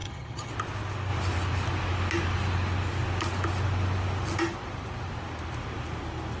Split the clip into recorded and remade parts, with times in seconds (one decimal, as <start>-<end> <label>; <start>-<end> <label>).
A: 0.0-0.5 remade; 0.5-6.4 recorded